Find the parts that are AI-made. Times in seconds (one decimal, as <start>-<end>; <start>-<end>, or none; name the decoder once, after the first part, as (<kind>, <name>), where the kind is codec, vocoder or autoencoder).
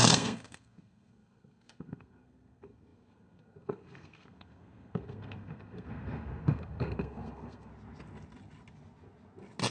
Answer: 0.0-7.7 (codec, SNAC)